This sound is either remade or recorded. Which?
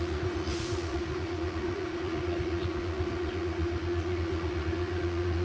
remade